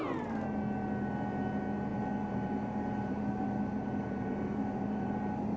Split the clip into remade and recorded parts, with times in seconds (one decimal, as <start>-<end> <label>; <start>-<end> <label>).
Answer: 0.0-1.9 recorded; 1.9-5.6 remade